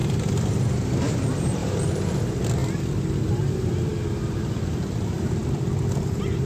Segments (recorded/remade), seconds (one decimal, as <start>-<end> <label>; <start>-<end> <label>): 0.0-0.6 remade; 0.6-1.6 recorded; 1.6-2.2 remade; 2.2-6.5 recorded